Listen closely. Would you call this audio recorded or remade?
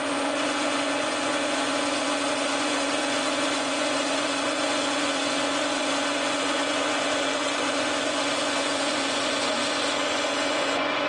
remade